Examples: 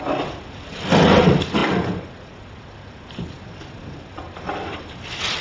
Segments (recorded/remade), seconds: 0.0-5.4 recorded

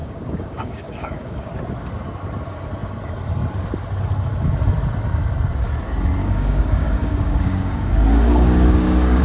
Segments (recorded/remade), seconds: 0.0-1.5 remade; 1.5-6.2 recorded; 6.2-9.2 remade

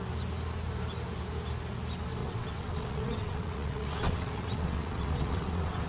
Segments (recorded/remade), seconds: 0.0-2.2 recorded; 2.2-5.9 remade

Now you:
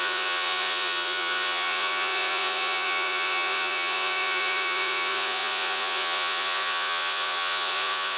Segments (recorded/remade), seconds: 0.0-8.2 remade

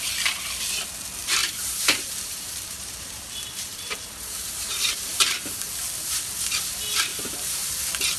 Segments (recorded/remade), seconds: 0.0-1.4 recorded; 1.4-5.3 remade; 5.3-7.1 recorded; 7.1-7.7 remade; 7.7-8.2 recorded